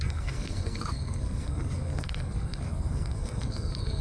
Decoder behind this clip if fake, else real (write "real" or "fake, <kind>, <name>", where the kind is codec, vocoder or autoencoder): fake, codec, SNAC